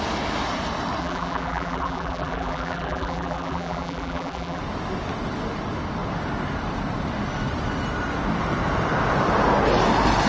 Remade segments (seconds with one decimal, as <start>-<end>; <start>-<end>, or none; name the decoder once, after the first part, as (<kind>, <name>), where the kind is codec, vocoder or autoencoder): 1.0-4.6 (vocoder, BigVGAN v2)